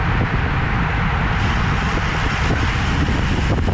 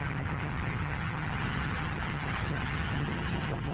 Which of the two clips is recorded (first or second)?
first